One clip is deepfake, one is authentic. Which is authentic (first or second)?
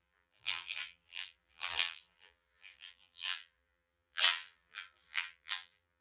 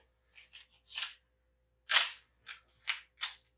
second